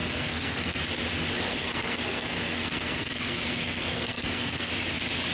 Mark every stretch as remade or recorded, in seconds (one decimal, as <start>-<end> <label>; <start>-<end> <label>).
0.0-0.8 remade; 0.8-1.5 recorded; 1.5-4.7 remade; 4.7-5.3 recorded